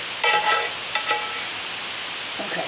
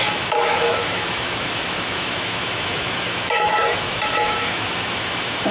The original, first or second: first